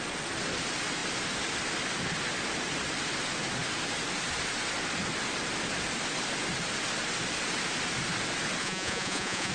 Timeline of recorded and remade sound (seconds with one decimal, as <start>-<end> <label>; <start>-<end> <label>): 0.0-8.6 recorded; 8.6-9.5 remade